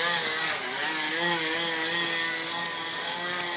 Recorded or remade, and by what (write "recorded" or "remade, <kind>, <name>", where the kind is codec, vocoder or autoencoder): remade, codec, DAC